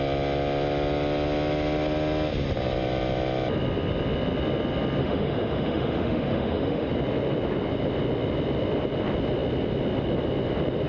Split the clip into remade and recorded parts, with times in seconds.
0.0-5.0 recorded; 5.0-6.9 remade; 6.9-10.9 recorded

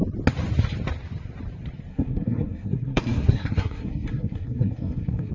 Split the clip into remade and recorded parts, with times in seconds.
0.0-1.9 recorded; 1.9-5.3 remade

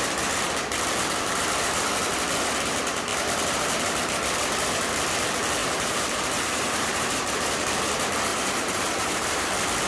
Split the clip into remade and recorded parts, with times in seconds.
0.0-5.6 recorded; 5.6-7.5 remade; 7.5-8.3 recorded; 8.3-9.5 remade; 9.5-9.9 recorded

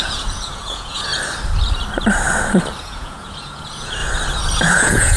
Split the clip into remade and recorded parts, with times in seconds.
0.0-1.1 remade; 1.1-2.8 recorded; 2.8-4.0 remade; 4.0-4.7 recorded; 4.7-5.2 remade

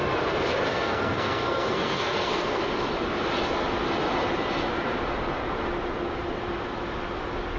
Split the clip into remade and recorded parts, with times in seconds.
0.0-0.7 recorded; 0.7-2.6 remade; 2.6-7.6 recorded

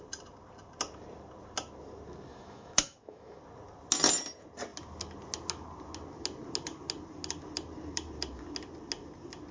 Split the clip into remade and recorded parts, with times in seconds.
0.0-2.3 recorded; 2.3-3.4 remade; 3.4-9.5 recorded

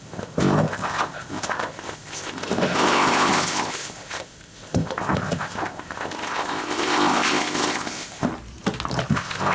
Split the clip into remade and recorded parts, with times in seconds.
0.0-8.3 remade; 8.3-9.1 recorded; 9.1-9.5 remade